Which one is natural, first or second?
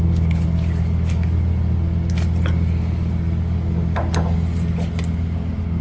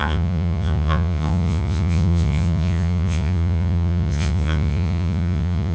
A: first